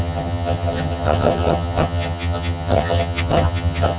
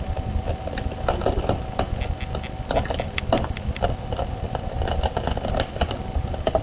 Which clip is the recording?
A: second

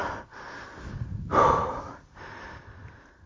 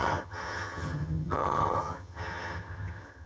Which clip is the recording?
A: first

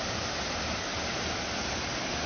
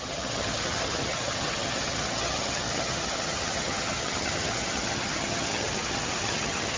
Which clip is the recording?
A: first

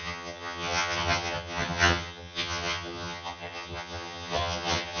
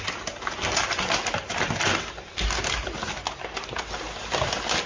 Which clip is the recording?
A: second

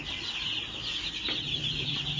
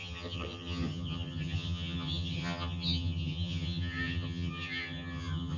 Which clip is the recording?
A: first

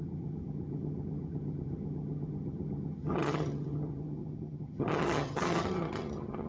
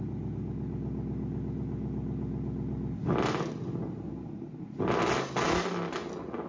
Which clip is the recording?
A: second